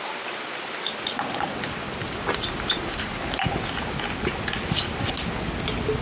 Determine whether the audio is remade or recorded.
recorded